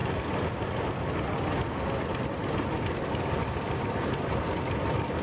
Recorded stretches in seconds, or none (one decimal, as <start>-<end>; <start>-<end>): 0.0-5.2